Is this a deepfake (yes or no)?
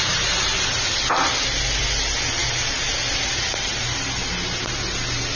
no